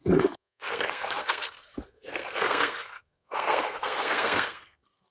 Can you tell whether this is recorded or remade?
remade